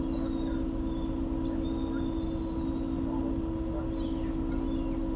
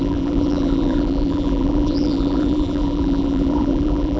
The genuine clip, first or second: first